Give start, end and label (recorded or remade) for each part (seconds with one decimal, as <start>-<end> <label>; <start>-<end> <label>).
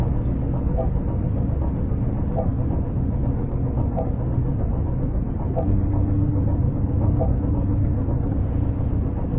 0.0-9.4 recorded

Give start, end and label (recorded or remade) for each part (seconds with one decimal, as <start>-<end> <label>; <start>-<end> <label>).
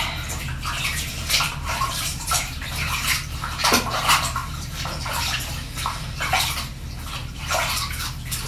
0.0-0.9 recorded; 0.9-3.1 remade; 3.1-8.5 recorded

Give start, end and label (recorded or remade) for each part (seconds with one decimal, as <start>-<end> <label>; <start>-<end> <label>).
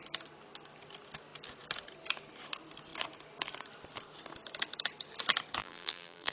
0.0-5.6 recorded; 5.6-6.3 remade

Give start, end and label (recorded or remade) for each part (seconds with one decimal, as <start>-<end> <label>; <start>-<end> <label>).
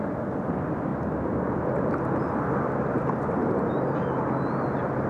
0.0-0.9 recorded; 0.9-1.5 remade; 1.5-3.4 recorded; 3.4-5.1 remade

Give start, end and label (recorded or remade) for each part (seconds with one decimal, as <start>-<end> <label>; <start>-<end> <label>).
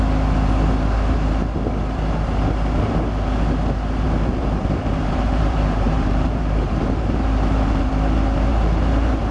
0.0-4.3 recorded; 4.3-7.9 remade; 7.9-8.5 recorded; 8.5-9.3 remade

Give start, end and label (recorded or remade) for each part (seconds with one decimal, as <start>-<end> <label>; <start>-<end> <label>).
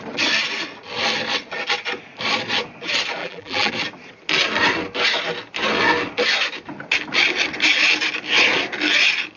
0.0-3.2 recorded; 3.2-3.7 remade; 3.7-9.4 recorded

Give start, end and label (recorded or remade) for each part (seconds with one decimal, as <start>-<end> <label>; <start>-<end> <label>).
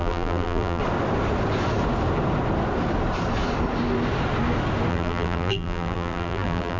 0.0-0.8 remade; 0.8-4.9 recorded; 4.9-6.8 remade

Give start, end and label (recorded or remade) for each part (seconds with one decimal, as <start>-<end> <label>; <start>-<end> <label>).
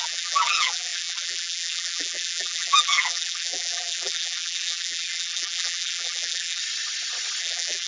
0.0-6.6 remade; 6.6-7.4 recorded; 7.4-7.9 remade